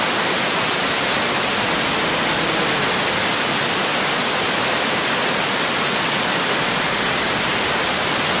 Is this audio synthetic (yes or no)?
no